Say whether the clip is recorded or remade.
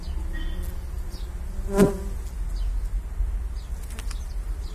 recorded